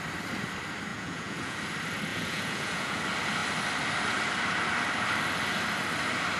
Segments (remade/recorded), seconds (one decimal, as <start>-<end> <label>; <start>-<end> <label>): 0.0-0.9 recorded; 0.9-1.6 remade; 1.6-2.1 recorded; 2.1-3.0 remade; 3.0-6.4 recorded